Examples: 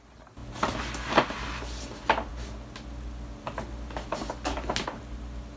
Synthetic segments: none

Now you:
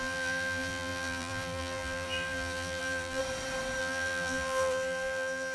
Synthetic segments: 0.0-3.2 (vocoder, BigVGAN v2); 3.8-5.5